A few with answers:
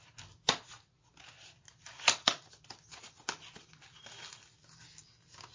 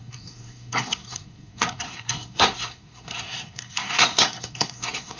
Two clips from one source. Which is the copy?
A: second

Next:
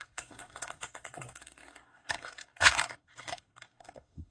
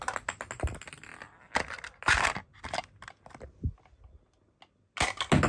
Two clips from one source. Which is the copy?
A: first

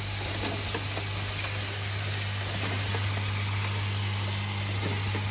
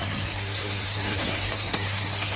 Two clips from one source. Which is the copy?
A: second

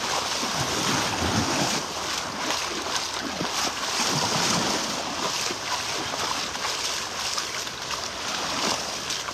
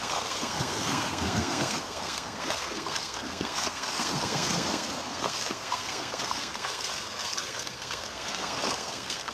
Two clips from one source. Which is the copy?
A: second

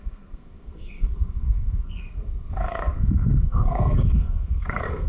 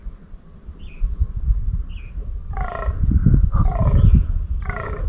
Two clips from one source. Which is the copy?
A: first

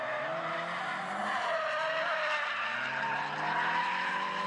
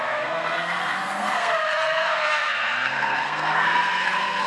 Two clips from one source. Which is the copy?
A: second